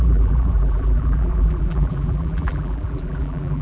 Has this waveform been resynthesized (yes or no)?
yes